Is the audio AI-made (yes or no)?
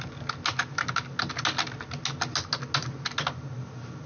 no